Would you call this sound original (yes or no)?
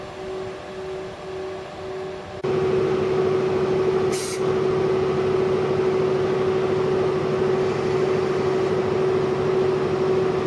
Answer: yes